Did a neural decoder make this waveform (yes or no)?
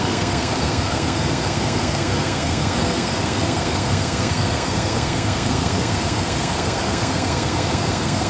yes